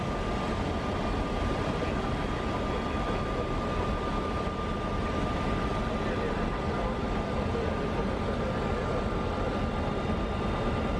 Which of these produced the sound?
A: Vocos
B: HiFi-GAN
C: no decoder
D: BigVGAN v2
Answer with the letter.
C